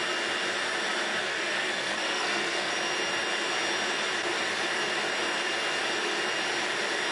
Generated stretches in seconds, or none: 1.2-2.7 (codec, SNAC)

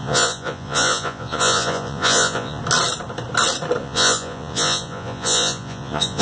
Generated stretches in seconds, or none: 0.0-2.6 (vocoder, Vocos); 3.8-6.2

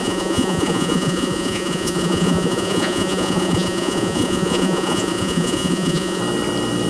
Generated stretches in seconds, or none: 0.0-6.2 (vocoder, Vocos)

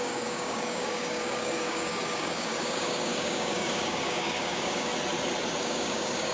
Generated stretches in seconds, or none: 0.0-4.9 (codec, DAC); 5.6-6.3

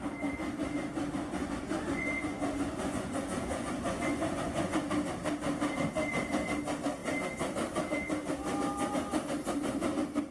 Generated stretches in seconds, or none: 1.4-4.9 (vocoder, Vocos)

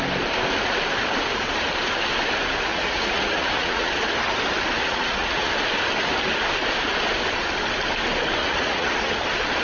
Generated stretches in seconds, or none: 2.7-3.9 (vocoder, Vocos); 4.8-5.5; 8.4-9.1

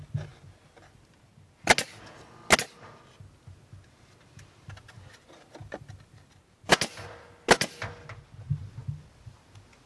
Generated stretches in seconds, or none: 5.6-6.4 (vocoder, BigVGAN v2)

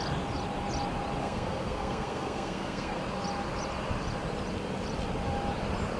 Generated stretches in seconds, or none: 1.2-3.0 (codec, SNAC)